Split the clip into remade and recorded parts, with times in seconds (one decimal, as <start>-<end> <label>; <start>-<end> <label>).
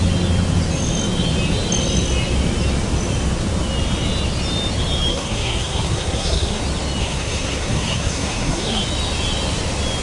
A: 0.0-5.1 recorded; 5.1-6.6 remade; 6.6-7.0 recorded; 7.0-8.8 remade; 8.8-10.0 recorded